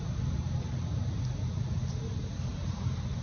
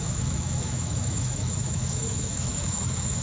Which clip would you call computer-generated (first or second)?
second